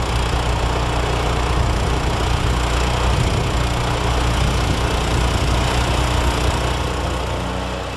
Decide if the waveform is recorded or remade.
recorded